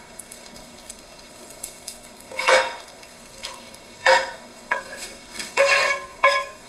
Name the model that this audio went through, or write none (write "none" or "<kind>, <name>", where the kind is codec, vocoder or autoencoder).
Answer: codec, SNAC